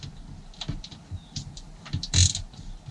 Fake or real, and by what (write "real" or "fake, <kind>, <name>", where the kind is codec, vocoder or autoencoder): real